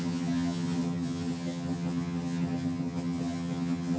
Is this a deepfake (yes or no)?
yes